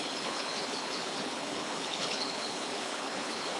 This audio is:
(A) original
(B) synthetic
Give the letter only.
B